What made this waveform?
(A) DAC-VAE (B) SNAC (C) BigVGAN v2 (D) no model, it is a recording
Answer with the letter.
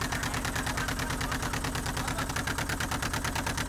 D